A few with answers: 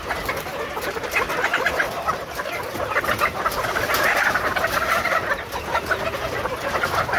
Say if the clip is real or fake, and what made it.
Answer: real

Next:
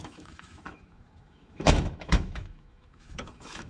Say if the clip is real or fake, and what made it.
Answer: fake, autoencoder, DAC-VAE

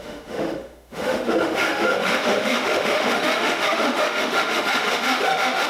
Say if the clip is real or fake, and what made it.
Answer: fake, autoencoder, DAC-VAE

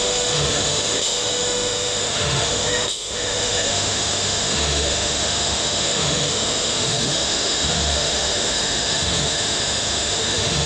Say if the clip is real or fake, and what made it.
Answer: fake, autoencoder, DAC-VAE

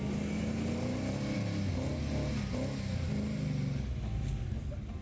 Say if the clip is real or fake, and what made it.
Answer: real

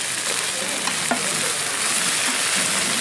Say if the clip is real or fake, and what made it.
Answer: real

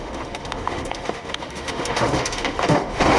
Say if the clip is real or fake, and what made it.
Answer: fake, autoencoder, DAC-VAE